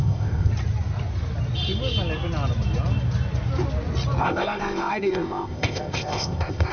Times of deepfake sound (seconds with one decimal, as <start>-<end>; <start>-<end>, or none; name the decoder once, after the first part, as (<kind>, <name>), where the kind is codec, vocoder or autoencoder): 0.0-0.5 (codec, ZipCodec); 4.2-6.7